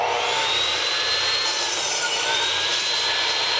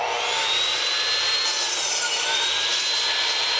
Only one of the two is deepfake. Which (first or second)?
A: first